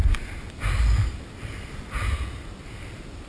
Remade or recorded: recorded